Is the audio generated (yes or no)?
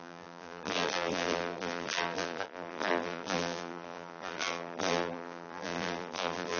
yes